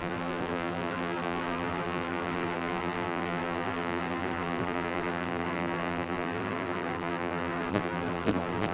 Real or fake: fake